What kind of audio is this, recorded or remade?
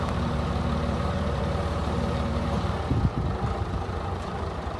remade